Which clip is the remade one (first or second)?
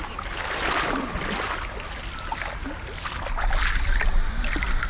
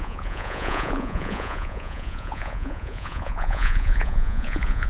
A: second